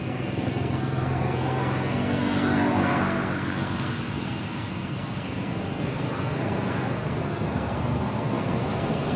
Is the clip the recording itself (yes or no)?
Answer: no